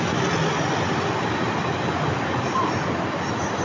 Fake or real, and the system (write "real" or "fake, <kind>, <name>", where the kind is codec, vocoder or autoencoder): real